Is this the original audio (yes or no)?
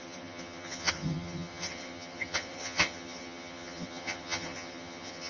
no